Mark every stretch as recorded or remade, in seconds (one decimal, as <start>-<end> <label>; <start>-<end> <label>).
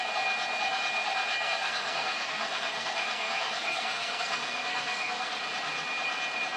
0.0-1.3 recorded; 1.3-5.3 remade; 5.3-6.6 recorded